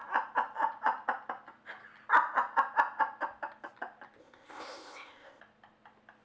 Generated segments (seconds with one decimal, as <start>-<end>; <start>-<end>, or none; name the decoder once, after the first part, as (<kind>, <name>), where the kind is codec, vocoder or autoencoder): 4.2-5.4 (codec, ZipCodec)